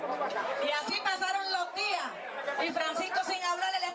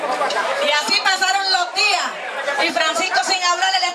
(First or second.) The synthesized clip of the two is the second